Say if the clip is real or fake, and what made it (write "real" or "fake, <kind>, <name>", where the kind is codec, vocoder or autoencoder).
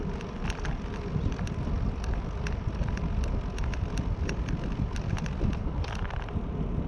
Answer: real